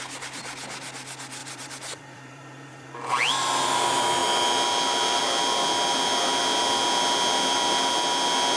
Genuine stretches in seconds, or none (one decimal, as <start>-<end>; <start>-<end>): 0.0-1.4; 3.4-8.6